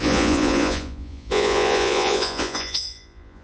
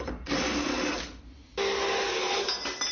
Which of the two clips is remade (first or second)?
first